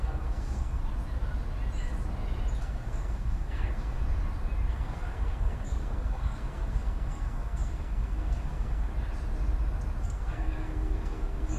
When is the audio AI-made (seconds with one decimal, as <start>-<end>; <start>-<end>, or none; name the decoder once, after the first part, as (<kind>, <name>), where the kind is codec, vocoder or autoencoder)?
0.0-0.8 (codec, SNAC); 2.6-4.0; 4.7-8.9; 10.0-11.6